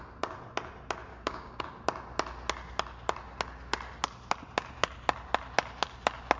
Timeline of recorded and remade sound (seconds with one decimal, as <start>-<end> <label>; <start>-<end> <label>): 0.0-1.1 recorded; 1.1-1.6 remade; 1.6-6.4 recorded